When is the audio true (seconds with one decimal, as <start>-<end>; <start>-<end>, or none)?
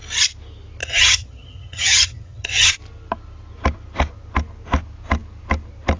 0.0-0.8; 2.7-6.0